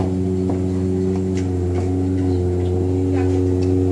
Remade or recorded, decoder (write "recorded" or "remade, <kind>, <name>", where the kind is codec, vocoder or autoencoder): recorded